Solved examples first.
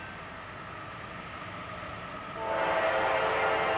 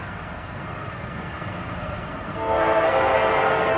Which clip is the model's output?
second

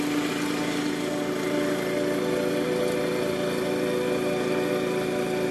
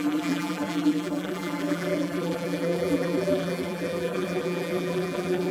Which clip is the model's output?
second